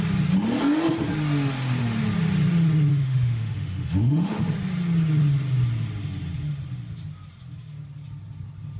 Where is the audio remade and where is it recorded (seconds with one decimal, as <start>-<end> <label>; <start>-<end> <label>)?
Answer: 0.0-2.9 recorded; 2.9-4.4 remade; 4.4-8.8 recorded